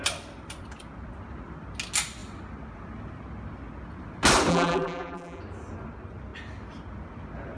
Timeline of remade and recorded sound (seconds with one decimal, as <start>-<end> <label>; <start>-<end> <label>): 0.0-4.5 recorded; 4.5-5.4 remade; 5.4-7.6 recorded

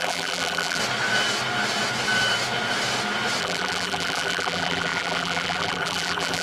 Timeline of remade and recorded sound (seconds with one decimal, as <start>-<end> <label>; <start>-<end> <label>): 0.0-0.8 remade; 0.8-3.4 recorded; 3.4-6.4 remade

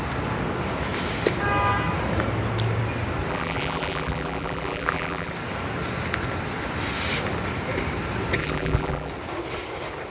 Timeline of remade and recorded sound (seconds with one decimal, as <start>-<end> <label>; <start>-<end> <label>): 0.0-3.3 recorded; 3.3-5.3 remade; 5.3-8.4 recorded; 8.4-9.1 remade; 9.1-10.1 recorded

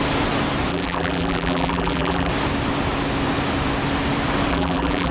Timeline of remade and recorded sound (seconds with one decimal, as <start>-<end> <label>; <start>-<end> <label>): 0.0-0.7 recorded; 0.7-2.3 remade; 2.3-4.5 recorded; 4.5-5.1 remade

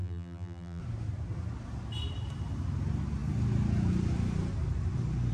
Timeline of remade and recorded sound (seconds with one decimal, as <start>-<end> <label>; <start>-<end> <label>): 0.0-0.8 remade; 0.8-5.3 recorded

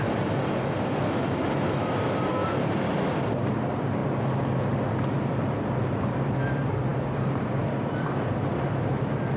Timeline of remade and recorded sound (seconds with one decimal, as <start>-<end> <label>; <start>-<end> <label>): 0.0-4.0 remade; 4.0-5.3 recorded; 5.3-9.4 remade

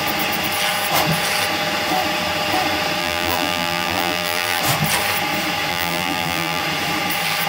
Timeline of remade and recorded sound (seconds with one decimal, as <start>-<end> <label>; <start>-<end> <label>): 0.0-3.0 recorded; 3.0-4.6 remade; 4.6-5.7 recorded; 5.7-6.6 remade; 6.6-7.5 recorded